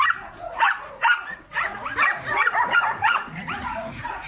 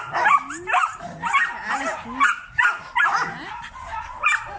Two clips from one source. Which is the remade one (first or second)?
first